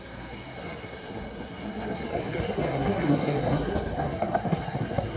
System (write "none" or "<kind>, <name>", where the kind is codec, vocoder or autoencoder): codec, SNAC